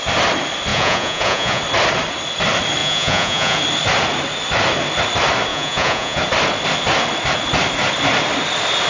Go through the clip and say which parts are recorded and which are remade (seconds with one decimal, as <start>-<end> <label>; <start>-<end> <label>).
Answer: 0.0-0.7 recorded; 0.7-1.6 remade; 1.6-2.8 recorded; 2.8-3.6 remade; 3.6-5.5 recorded; 5.5-6.2 remade; 6.2-8.9 recorded